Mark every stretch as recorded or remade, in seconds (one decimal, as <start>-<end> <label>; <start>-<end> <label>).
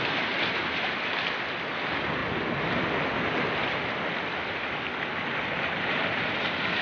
0.0-6.8 recorded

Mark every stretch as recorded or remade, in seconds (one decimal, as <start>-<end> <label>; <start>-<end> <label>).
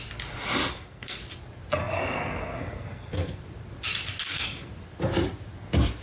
0.0-0.7 recorded; 0.7-1.2 remade; 1.2-1.8 recorded; 1.8-3.4 remade; 3.4-4.2 recorded; 4.2-4.7 remade; 4.7-6.0 recorded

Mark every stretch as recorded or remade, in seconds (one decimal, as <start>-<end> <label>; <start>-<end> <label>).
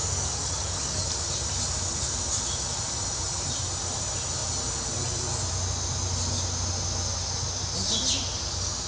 0.0-1.1 remade; 1.1-8.9 recorded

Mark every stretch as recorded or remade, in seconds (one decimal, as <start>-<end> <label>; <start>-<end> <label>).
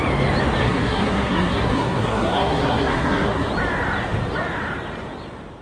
0.0-0.6 recorded; 0.6-3.5 remade; 3.5-5.6 recorded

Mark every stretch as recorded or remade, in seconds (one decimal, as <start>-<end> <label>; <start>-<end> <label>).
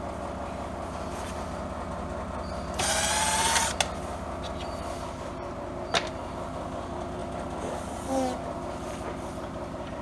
0.0-10.0 recorded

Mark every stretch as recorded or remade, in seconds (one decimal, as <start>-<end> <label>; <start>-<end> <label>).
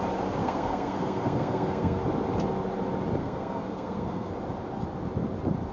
0.0-0.4 recorded; 0.4-2.0 remade; 2.0-3.2 recorded; 3.2-4.3 remade; 4.3-5.7 recorded